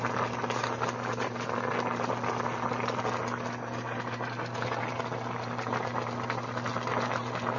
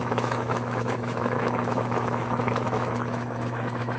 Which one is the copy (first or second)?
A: second